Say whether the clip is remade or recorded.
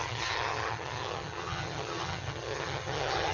remade